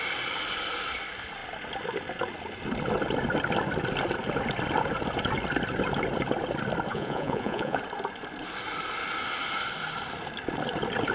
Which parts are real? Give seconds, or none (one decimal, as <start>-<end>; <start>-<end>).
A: 0.0-6.9; 7.8-11.1